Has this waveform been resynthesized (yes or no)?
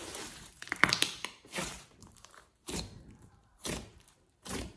yes